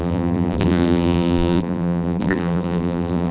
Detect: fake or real fake